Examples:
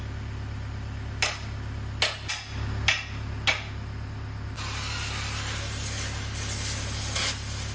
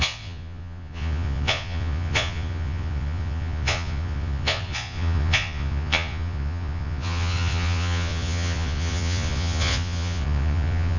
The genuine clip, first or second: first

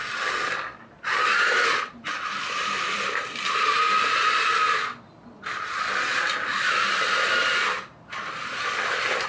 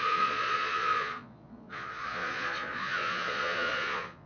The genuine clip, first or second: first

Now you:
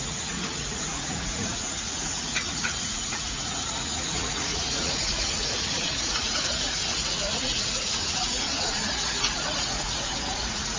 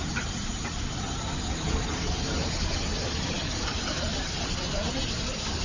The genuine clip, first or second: second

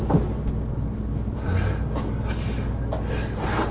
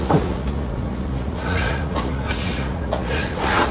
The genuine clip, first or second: first